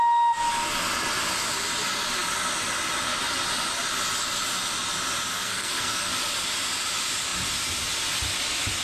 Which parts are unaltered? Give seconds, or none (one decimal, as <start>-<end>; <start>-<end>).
0.0-5.3; 6.1-8.8